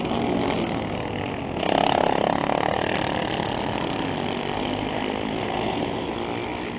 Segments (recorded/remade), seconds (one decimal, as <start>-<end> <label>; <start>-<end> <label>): 0.0-5.4 recorded; 5.4-6.1 remade; 6.1-6.8 recorded